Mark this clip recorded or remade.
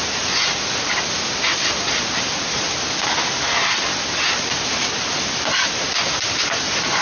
remade